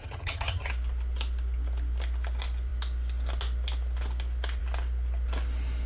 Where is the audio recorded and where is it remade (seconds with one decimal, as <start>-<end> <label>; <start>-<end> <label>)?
0.0-0.7 remade; 0.7-5.9 recorded